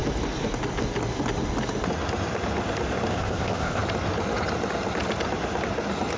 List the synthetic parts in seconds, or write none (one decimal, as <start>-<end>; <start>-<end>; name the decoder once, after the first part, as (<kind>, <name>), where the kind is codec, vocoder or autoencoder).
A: 3.1-3.8 (codec, ZipCodec)